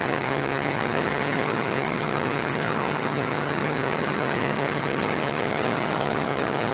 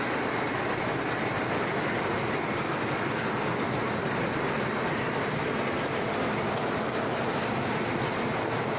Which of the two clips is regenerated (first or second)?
first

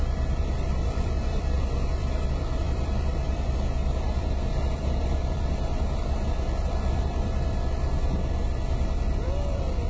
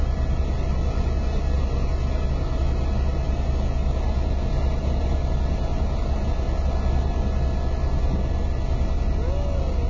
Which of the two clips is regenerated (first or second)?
first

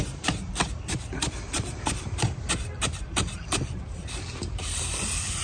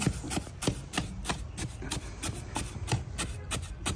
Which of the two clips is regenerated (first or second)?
first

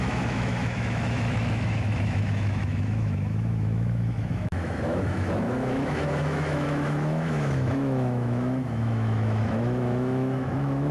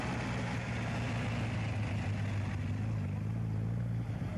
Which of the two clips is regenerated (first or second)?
first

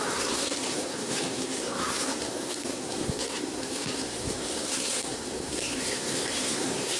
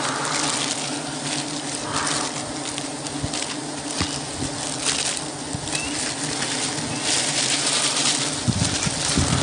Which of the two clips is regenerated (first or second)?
first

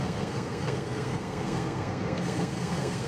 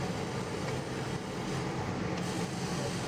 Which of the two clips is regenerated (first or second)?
first